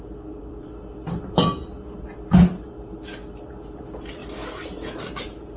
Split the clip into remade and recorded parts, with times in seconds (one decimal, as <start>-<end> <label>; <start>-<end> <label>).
0.0-5.6 recorded